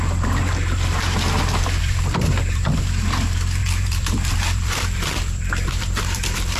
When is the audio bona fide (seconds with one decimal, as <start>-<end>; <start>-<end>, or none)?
0.0-1.8; 2.8-3.6